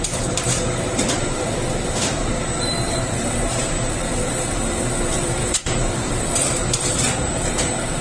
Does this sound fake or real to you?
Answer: fake